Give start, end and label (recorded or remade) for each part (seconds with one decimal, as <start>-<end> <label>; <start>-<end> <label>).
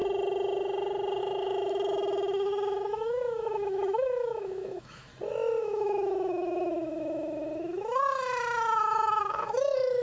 0.0-1.2 recorded; 1.2-5.1 remade; 5.1-5.6 recorded; 5.6-10.0 remade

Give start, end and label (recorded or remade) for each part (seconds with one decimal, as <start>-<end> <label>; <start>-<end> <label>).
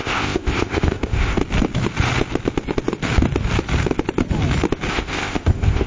0.0-1.4 remade; 1.4-4.9 recorded; 4.9-5.9 remade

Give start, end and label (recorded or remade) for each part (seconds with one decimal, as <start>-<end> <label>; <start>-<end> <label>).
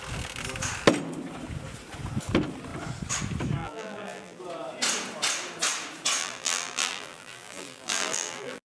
0.0-3.6 recorded; 3.6-4.4 remade; 4.4-6.2 recorded; 6.2-8.7 remade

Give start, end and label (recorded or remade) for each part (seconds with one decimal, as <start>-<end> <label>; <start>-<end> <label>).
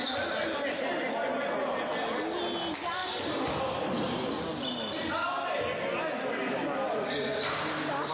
0.0-8.1 recorded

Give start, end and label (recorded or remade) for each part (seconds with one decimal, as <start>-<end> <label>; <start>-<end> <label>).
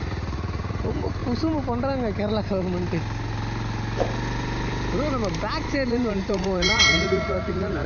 0.0-1.2 remade; 1.2-5.9 recorded; 5.9-7.9 remade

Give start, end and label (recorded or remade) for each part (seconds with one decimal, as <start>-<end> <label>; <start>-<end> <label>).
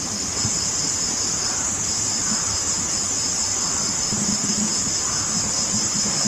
0.0-4.7 remade; 4.7-5.5 recorded; 5.5-6.3 remade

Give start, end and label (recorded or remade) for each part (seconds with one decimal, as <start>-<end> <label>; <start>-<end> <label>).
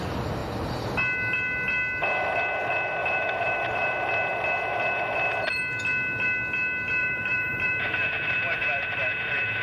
0.0-3.0 recorded; 3.0-3.9 remade; 3.9-7.0 recorded; 7.0-9.6 remade